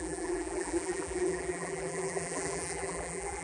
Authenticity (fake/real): fake